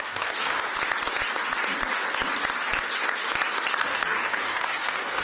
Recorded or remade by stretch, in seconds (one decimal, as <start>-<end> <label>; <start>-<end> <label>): 0.0-0.7 remade; 0.7-3.8 recorded; 3.8-5.2 remade